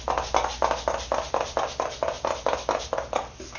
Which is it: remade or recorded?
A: recorded